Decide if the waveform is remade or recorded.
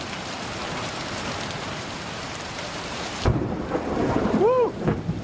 remade